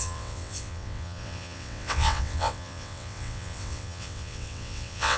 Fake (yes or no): yes